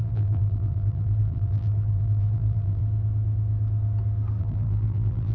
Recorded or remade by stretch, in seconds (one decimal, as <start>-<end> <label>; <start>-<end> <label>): 0.0-2.8 remade; 2.8-4.4 recorded; 4.4-5.3 remade